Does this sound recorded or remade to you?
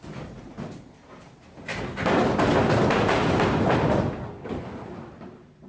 recorded